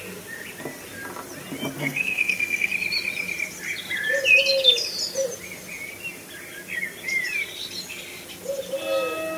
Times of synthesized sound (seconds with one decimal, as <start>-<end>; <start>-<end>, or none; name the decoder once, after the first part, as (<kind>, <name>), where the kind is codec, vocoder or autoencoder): 1.8-2.7 (codec, SNAC)